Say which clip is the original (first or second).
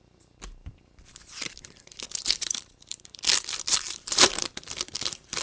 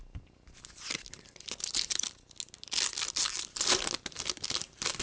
second